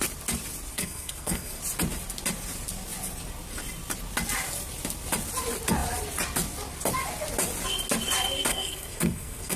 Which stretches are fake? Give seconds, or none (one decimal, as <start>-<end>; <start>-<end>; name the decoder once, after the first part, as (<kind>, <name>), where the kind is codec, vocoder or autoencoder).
0.7-1.6 (codec, SNAC); 8.5-9.6